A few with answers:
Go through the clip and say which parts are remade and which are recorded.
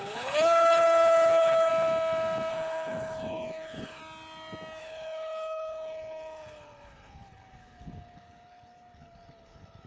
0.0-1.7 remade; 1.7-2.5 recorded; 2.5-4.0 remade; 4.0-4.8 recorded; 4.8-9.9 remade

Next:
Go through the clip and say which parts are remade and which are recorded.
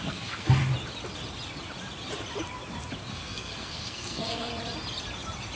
0.0-0.6 remade; 0.6-3.1 recorded; 3.1-4.5 remade; 4.5-5.6 recorded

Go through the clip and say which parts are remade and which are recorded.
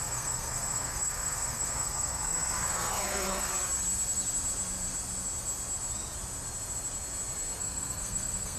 0.0-3.5 remade; 3.5-7.6 recorded; 7.6-8.6 remade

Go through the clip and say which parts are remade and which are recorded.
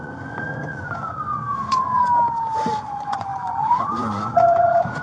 0.0-2.0 remade; 2.0-2.8 recorded; 2.8-5.0 remade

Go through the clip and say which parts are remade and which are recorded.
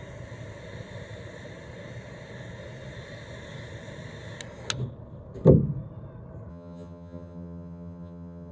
0.0-6.5 recorded; 6.5-8.5 remade